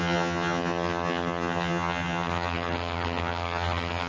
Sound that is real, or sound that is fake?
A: fake